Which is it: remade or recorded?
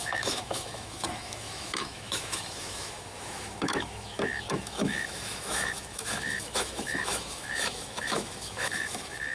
remade